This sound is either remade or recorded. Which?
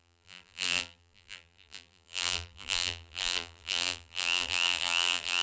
remade